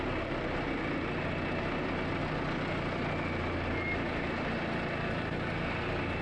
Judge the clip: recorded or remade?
recorded